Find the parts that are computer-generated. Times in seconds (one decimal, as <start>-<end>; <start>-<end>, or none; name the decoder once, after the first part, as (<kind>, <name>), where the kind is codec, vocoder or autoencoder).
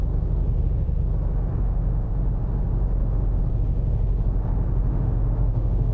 1.6-2.4 (autoencoder, DAC-VAE); 3.0-3.4; 4.9-5.9